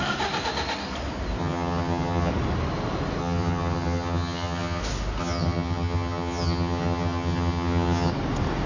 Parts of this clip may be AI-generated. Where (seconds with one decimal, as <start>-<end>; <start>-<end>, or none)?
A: 1.4-2.3; 3.2-4.8; 5.2-8.1

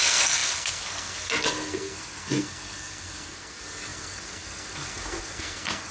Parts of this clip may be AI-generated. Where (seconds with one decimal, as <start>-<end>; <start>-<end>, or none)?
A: 0.0-5.9

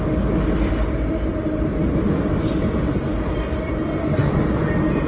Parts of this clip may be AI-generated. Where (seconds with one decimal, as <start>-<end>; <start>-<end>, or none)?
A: 3.1-4.4

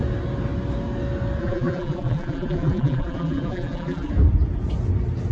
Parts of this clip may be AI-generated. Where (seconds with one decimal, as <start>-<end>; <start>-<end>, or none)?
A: 1.4-4.1

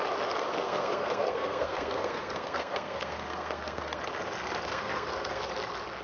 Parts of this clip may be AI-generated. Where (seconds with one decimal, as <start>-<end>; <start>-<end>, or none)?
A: 0.4-4.0; 4.7-5.4

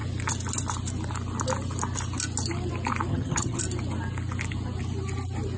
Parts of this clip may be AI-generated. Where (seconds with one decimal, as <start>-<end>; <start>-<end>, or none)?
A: 3.1-3.6

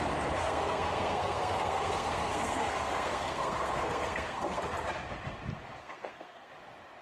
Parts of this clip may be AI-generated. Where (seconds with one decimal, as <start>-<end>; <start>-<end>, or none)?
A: 0.4-4.6; 5.8-6.5